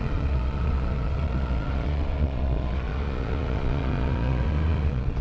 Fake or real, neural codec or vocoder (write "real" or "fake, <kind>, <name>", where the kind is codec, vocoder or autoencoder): fake, vocoder, Vocos